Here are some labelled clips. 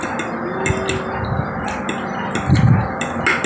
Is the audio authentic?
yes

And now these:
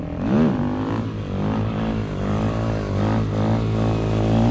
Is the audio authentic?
yes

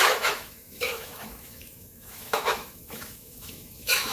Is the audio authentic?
no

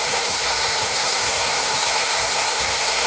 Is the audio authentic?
no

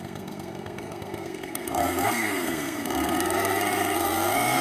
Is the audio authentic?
no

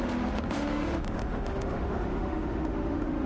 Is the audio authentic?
no